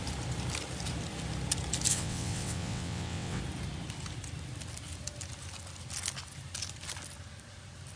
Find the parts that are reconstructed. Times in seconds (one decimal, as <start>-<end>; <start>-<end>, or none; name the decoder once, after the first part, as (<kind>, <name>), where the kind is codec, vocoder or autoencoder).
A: 1.9-3.4 (vocoder, WaveNeXt)